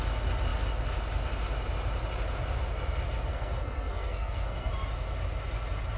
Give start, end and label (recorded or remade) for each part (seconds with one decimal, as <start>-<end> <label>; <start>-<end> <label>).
0.0-3.3 recorded; 3.3-4.7 remade; 4.7-6.0 recorded